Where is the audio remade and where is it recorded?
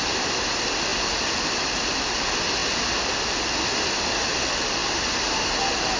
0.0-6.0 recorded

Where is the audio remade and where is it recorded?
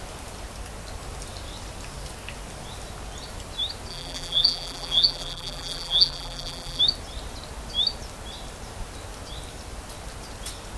0.0-3.9 recorded; 3.9-6.8 remade; 6.8-10.8 recorded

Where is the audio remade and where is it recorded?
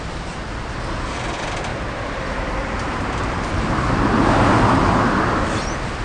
0.0-1.7 recorded; 1.7-5.0 remade; 5.0-6.0 recorded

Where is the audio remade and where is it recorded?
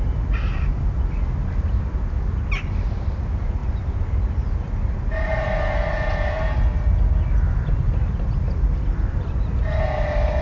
0.0-10.4 recorded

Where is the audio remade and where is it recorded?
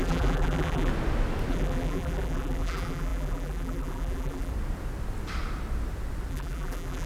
0.0-0.9 remade; 0.9-1.5 recorded; 1.5-4.5 remade; 4.5-6.3 recorded; 6.3-7.1 remade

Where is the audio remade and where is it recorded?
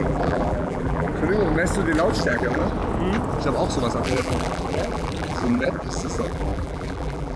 0.0-1.1 remade; 1.1-2.2 recorded; 2.2-2.6 remade; 2.6-4.0 recorded; 4.0-7.4 remade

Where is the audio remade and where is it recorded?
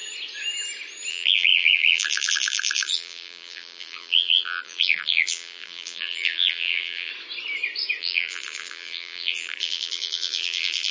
0.0-1.1 recorded; 1.1-7.1 remade; 7.1-8.0 recorded; 8.0-10.9 remade